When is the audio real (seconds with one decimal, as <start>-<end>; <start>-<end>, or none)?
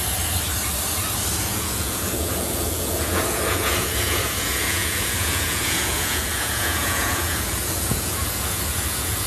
0.0-1.4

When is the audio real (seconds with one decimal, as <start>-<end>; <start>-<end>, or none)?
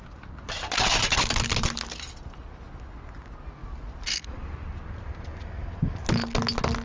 0.0-3.6; 4.7-6.8